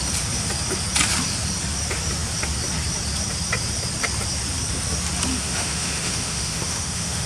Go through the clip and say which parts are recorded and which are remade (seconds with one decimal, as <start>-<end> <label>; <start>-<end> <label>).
0.0-5.3 recorded; 5.3-7.3 remade